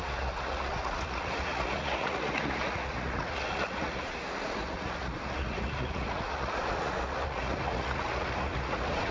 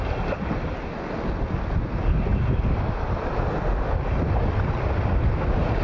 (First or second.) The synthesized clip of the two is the first